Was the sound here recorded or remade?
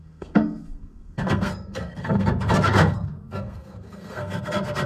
remade